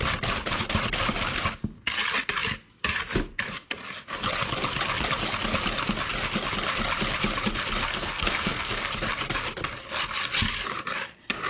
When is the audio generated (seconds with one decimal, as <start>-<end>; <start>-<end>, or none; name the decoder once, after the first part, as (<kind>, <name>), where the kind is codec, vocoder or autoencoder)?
7.9-8.9 (codec, SNAC)